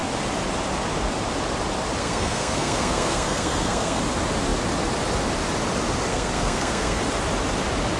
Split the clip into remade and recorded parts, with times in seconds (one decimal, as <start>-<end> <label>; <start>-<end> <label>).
0.0-2.0 recorded; 2.0-4.0 remade; 4.0-6.1 recorded; 6.1-7.0 remade; 7.0-8.0 recorded